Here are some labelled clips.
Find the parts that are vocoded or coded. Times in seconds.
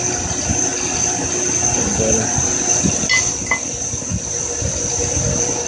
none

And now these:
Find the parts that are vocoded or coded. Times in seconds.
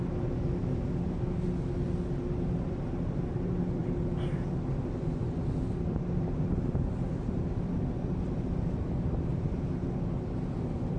none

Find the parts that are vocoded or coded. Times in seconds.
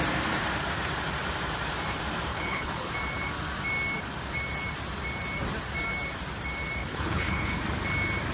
2.3-2.9; 6.8-7.6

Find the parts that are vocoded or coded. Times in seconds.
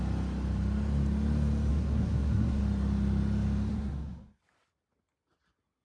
1.7-2.6; 3.7-4.4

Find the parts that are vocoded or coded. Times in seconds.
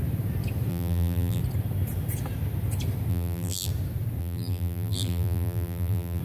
0.7-1.4; 3.1-3.7; 4.2-6.2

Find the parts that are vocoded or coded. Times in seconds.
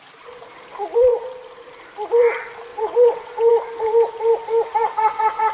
2.7-3.5; 4.7-5.5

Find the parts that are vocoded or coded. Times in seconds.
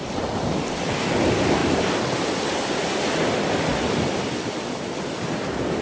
none